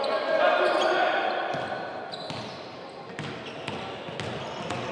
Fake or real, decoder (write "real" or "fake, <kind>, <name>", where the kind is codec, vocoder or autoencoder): real